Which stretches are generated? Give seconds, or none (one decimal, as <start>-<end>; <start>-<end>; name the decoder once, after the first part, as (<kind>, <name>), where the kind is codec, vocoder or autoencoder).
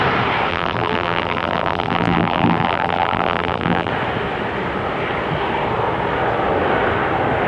0.5-3.9 (vocoder, BigVGAN v2)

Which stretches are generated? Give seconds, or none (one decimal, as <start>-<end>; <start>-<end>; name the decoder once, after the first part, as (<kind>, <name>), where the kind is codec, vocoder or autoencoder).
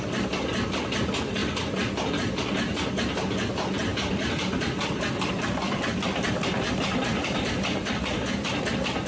1.4-2.5 (vocoder, BigVGAN v2); 3.9-8.6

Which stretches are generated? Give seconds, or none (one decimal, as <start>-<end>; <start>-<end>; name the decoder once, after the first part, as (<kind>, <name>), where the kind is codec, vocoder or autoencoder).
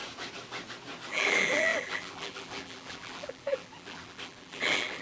1.1-5.0 (vocoder, BigVGAN v2)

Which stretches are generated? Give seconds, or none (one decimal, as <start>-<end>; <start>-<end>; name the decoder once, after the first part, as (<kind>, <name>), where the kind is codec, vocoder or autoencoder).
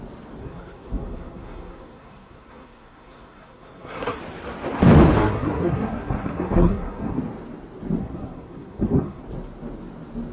0.4-4.2 (codec, SNAC); 5.2-7.2; 8.0-9.2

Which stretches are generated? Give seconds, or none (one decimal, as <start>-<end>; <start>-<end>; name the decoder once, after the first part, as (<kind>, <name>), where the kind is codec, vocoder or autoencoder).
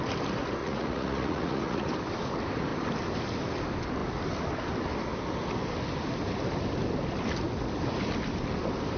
0.6-1.9 (vocoder, Vocos)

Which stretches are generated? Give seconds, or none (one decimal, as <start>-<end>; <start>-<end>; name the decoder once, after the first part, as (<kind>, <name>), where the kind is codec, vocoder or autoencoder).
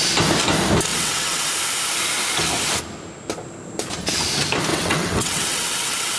0.9-1.5 (vocoder, WaveNeXt); 4.7-6.2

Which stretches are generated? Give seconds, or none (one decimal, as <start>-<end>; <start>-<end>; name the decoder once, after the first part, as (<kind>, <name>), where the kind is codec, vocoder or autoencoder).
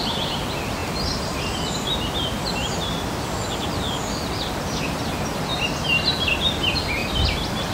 none